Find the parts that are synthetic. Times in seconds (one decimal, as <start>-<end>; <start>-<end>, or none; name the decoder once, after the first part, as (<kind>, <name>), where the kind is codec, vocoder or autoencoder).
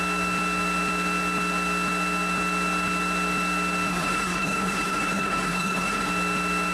3.9-6.1 (codec, SNAC)